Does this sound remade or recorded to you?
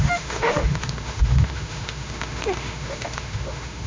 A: remade